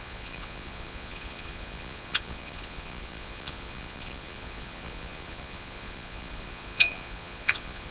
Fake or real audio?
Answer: fake